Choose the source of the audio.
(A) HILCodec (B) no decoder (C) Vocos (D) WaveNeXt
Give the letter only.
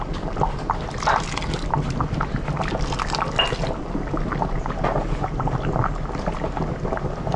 B